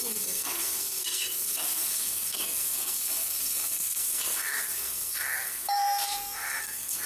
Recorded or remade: remade